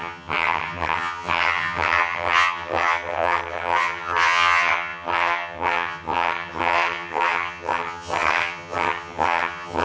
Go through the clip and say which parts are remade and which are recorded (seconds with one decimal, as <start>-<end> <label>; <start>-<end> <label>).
0.0-9.8 remade